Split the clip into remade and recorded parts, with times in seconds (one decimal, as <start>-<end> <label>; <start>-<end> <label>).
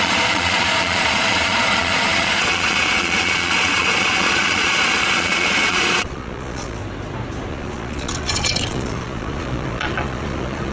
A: 0.0-6.8 remade; 6.8-7.5 recorded; 7.5-10.7 remade